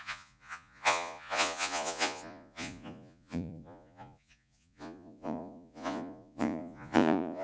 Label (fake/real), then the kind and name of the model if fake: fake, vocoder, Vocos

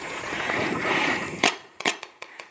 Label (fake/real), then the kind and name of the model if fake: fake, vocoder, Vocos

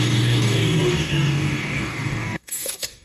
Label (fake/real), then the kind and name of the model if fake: fake, codec, DAC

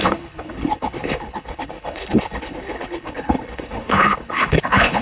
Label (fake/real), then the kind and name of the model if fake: fake, codec, HILCodec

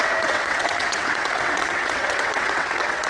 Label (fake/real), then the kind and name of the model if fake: fake, vocoder, WaveNeXt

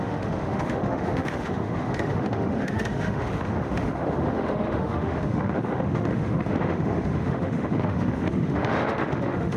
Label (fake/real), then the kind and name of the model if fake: fake, autoencoder, DAC-VAE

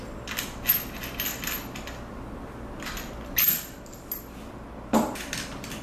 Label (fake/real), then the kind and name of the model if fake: real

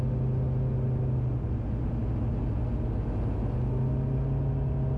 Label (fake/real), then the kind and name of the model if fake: real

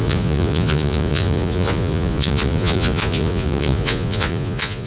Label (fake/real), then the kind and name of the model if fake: fake, vocoder, Vocos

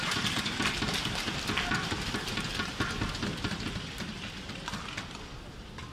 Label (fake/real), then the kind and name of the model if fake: real